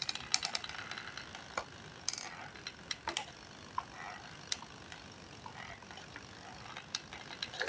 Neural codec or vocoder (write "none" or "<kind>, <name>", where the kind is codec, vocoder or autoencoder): none